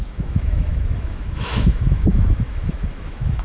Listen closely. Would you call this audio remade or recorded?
remade